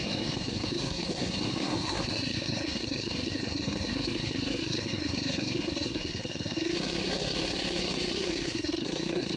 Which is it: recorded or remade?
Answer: remade